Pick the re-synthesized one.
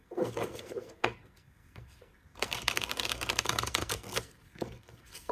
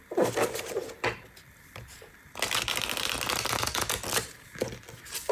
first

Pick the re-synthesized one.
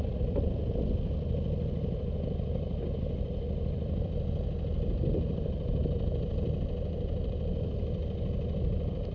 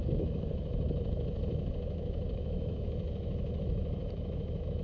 second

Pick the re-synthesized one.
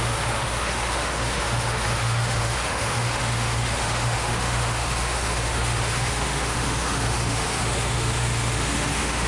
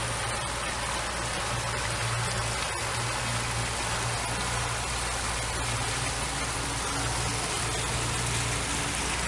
first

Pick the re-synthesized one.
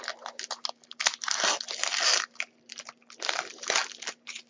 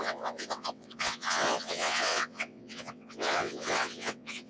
second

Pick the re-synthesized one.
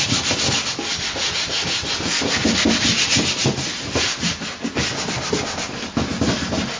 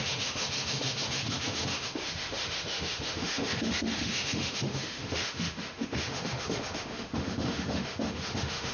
second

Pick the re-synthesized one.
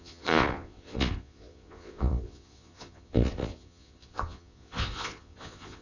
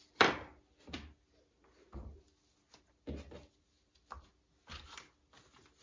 first